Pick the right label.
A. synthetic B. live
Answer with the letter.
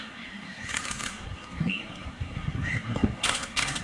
A